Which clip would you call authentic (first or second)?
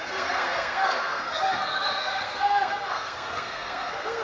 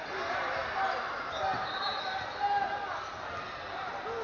second